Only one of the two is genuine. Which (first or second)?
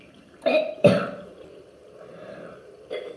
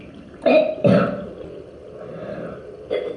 second